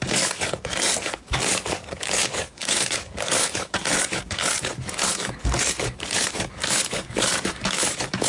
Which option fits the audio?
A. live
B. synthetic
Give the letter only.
B